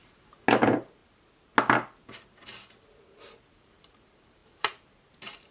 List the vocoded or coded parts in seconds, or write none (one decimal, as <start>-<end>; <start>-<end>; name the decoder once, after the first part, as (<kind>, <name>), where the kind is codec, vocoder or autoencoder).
0.5-1.0 (vocoder, BigVGAN v2); 3.5-5.5